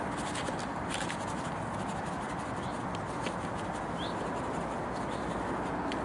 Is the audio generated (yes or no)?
no